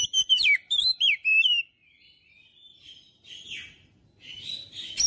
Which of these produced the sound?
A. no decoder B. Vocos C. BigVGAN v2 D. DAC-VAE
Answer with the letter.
A